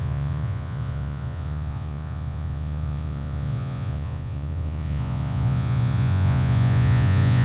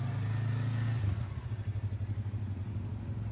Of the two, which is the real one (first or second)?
second